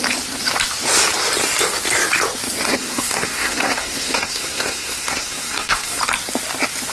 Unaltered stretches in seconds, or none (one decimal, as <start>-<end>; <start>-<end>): 0.0-2.7; 6.0-6.9